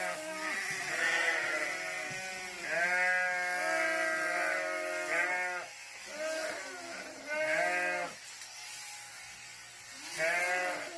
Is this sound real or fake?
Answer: real